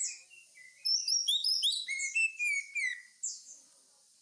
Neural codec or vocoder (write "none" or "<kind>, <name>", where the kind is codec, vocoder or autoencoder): none